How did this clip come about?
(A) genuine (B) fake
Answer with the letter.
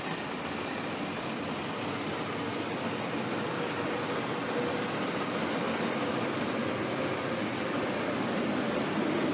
A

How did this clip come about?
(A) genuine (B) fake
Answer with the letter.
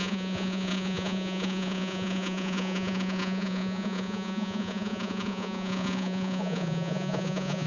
B